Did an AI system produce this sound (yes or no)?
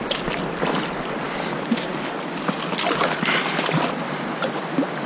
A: no